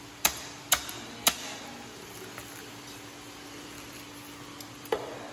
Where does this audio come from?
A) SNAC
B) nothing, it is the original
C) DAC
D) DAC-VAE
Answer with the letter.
B